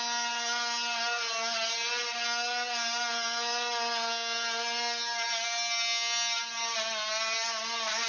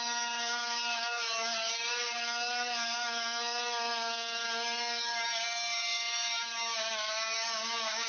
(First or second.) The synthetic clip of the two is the second